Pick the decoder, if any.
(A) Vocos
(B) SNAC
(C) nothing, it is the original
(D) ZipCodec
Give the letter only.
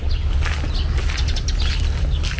C